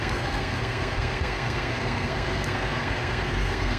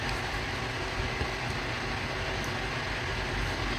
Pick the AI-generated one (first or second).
first